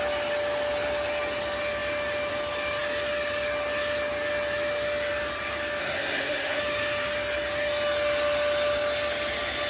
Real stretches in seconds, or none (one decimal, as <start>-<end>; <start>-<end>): 0.0-5.8; 6.6-9.7